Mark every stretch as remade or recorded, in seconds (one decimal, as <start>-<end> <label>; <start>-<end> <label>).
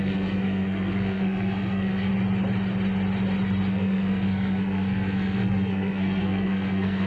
0.0-2.1 remade; 2.1-3.7 recorded; 3.7-7.1 remade